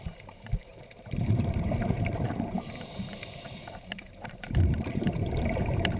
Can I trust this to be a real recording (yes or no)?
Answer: no